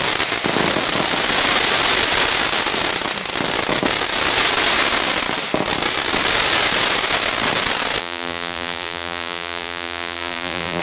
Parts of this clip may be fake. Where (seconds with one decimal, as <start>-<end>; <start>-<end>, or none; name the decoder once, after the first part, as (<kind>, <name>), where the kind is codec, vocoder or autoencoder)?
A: 8.0-10.8 (vocoder, BigVGAN v2)